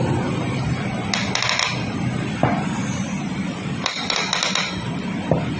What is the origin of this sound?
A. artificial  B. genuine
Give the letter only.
B